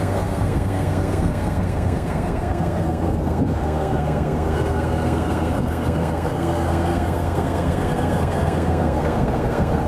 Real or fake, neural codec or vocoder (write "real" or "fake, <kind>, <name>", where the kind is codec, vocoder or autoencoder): fake, codec, SNAC